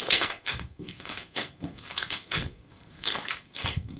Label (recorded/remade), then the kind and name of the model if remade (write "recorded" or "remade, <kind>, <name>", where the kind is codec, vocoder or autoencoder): remade, codec, SNAC